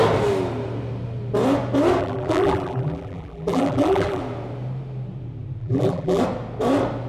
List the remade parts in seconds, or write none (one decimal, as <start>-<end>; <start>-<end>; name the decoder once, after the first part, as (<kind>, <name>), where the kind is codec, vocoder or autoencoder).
2.0-4.2 (vocoder, BigVGAN v2); 5.6-6.2